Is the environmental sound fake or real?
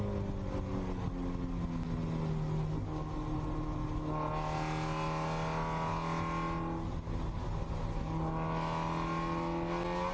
real